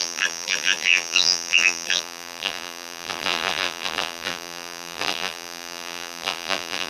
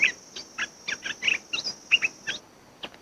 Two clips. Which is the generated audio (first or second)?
first